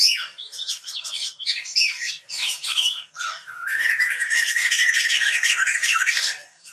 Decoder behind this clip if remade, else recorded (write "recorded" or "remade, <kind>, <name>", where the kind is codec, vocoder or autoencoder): remade, codec, DAC